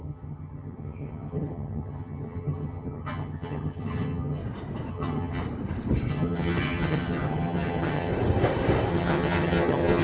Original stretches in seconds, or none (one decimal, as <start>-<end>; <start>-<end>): 4.4-4.9; 5.4-6.1; 8.1-8.9